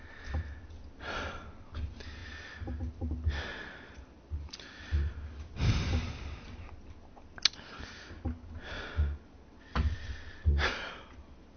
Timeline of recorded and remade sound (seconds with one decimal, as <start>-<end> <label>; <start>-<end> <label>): 0.0-11.6 recorded